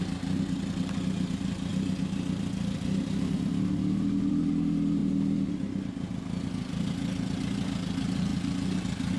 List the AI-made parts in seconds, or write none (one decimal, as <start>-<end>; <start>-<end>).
none